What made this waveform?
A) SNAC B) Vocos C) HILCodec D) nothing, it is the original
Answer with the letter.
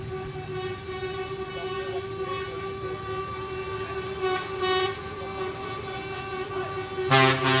D